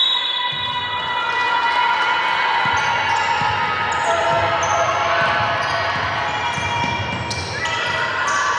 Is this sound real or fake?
real